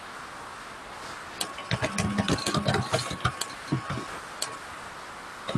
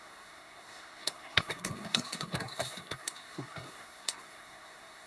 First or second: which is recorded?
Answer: first